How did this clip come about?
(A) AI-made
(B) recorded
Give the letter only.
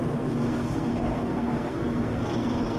A